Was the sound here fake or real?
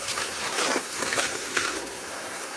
fake